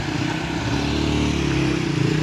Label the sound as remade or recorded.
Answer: recorded